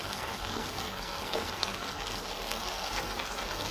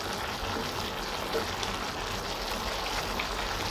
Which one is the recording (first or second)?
second